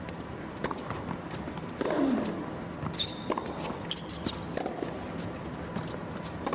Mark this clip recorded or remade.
recorded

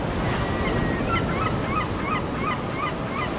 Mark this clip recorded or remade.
recorded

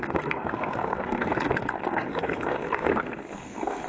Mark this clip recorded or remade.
remade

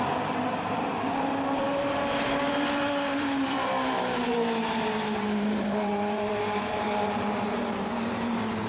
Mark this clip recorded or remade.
remade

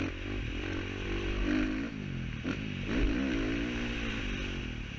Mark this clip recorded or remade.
recorded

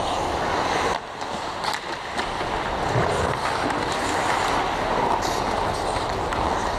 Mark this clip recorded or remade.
recorded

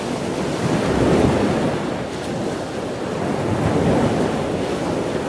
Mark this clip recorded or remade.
recorded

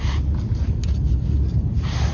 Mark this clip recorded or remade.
recorded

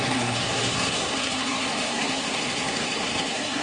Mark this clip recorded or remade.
remade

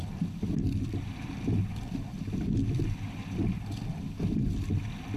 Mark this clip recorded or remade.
recorded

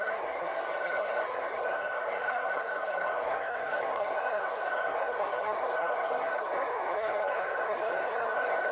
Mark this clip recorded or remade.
remade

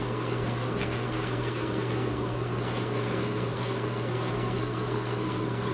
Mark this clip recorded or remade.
remade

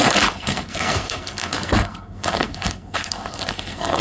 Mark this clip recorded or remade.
remade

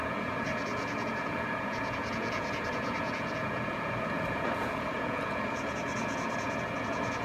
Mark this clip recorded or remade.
remade